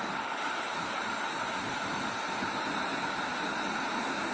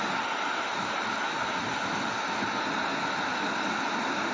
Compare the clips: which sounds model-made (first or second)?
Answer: first